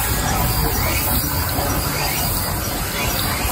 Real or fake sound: real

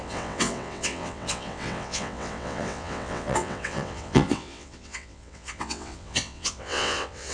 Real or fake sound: fake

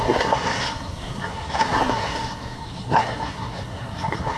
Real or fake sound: fake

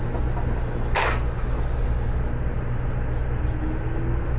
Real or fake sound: real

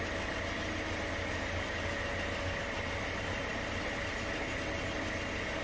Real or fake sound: real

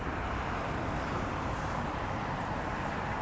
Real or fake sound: fake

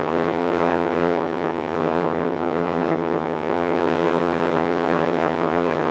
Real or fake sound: fake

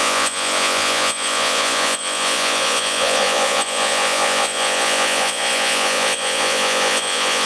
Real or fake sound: fake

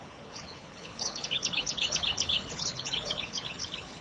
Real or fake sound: fake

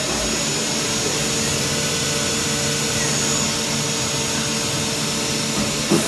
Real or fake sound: real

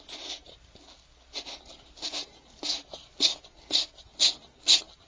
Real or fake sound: real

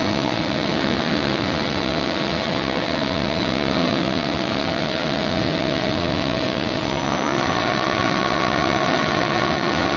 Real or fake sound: fake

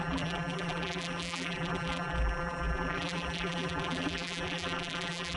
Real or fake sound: fake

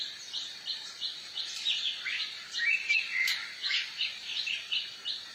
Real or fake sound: real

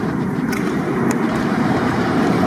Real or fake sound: fake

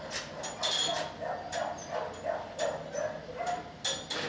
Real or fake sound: real